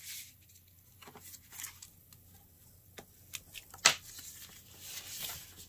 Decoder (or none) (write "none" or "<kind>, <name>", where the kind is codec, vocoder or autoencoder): none